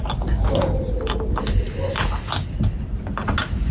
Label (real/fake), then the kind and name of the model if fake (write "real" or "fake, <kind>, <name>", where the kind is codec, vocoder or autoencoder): real